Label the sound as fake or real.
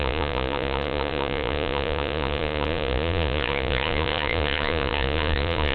fake